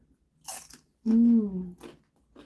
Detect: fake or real real